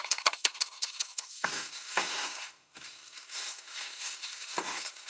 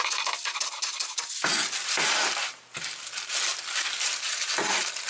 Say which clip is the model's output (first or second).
first